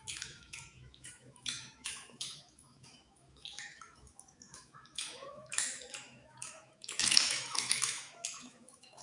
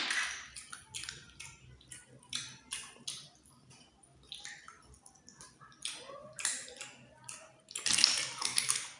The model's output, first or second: first